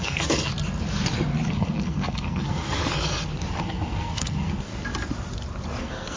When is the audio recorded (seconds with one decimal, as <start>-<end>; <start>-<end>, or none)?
0.5-1.5; 2.8-3.6; 4.7-5.8